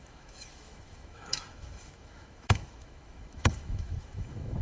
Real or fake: fake